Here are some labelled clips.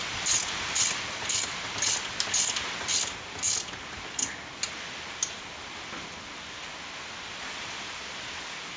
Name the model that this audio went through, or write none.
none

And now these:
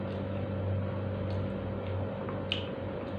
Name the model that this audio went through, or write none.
none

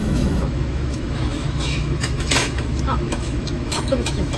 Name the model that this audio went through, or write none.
autoencoder, DAC-VAE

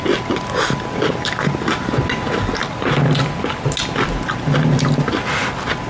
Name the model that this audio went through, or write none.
none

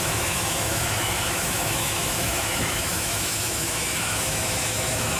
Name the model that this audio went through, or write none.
autoencoder, DAC-VAE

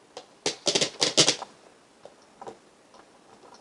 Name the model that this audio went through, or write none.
none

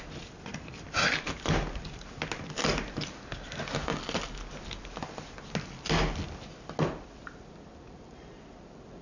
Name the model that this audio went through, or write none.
none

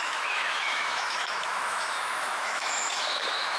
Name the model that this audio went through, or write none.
autoencoder, DAC-VAE